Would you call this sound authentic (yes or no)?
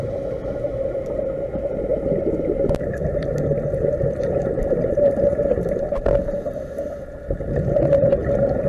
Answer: yes